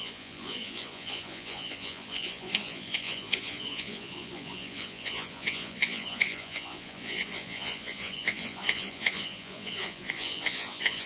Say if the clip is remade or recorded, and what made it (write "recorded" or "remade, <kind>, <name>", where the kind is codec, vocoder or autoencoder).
remade, vocoder, Vocos